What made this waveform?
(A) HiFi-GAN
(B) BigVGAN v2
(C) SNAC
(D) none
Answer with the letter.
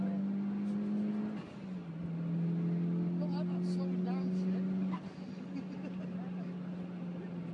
D